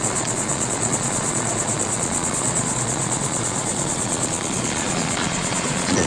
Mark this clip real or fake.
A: fake